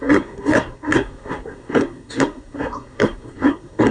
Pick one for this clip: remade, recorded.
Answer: remade